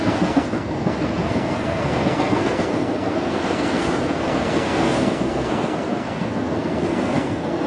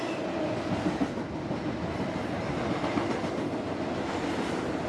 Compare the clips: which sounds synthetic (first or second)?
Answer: first